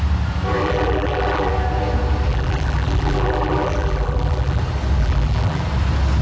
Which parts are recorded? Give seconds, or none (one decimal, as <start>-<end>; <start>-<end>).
0.0-0.6; 1.5-2.3; 4.6-5.0; 5.6-6.2